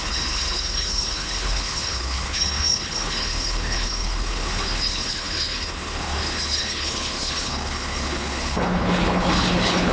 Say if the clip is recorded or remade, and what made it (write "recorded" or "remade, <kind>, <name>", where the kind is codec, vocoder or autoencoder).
remade, codec, HILCodec